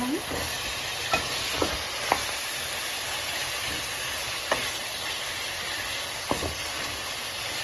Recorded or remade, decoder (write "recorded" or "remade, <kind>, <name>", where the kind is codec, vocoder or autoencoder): recorded